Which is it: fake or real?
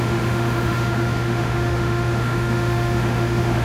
fake